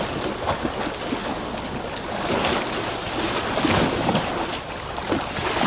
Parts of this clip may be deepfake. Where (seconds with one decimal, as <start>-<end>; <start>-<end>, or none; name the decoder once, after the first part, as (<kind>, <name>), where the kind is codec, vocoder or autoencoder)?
none